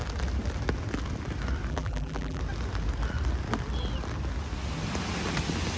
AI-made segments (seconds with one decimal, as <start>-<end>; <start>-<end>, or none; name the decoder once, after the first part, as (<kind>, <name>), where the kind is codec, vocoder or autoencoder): 1.7-2.4 (vocoder, BigVGAN v2)